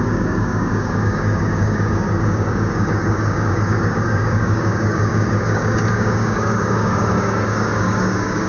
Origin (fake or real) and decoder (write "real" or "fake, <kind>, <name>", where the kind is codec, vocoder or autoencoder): fake, codec, DAC